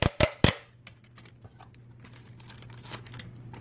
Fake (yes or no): no